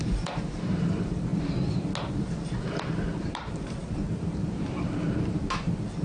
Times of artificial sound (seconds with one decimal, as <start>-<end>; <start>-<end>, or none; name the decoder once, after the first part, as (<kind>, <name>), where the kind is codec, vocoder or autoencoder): 0.0-1.3 (vocoder, BigVGAN v2); 3.2-6.0